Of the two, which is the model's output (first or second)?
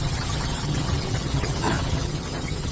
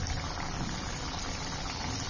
first